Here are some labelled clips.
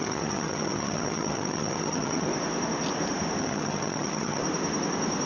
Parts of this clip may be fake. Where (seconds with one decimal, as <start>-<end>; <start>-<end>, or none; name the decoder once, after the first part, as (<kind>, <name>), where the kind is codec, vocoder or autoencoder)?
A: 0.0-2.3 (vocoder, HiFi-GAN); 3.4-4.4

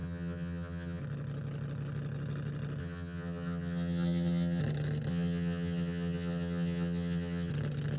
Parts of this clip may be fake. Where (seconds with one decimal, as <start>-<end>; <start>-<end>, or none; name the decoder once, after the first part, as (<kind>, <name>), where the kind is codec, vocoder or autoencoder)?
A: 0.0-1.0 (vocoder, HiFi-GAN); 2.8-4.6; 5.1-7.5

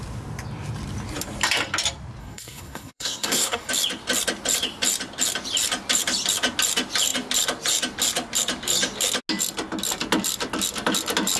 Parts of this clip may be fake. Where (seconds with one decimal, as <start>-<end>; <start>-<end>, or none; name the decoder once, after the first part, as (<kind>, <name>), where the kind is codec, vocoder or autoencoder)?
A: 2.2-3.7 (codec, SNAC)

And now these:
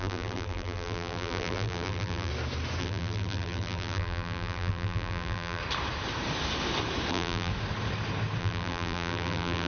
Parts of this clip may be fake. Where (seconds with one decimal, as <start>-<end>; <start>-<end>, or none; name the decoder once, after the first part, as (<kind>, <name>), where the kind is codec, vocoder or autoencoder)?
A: 0.0-2.3 (vocoder, BigVGAN v2); 2.8-5.6; 7.1-7.5; 8.4-9.7

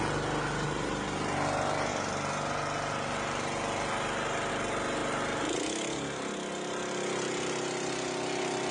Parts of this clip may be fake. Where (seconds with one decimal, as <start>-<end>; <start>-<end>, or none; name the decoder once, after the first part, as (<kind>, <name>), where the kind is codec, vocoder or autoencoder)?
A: none

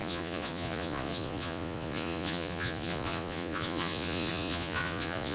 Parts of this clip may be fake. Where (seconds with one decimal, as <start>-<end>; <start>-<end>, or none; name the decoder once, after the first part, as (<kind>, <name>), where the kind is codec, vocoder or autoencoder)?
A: 0.0-5.3 (vocoder, Vocos)

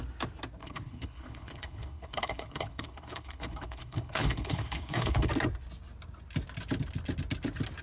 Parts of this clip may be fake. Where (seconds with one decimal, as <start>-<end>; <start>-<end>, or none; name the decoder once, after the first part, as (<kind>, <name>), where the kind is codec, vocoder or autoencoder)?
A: 0.6-5.3 (codec, HILCodec)

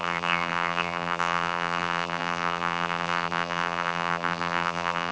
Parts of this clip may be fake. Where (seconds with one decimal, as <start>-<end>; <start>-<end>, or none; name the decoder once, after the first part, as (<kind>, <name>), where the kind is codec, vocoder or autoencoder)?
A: 0.0-5.1 (vocoder, BigVGAN v2)